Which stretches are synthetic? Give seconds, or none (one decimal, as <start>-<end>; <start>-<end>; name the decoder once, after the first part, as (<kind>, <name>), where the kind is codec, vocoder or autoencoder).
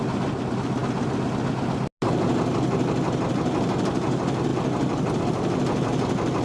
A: none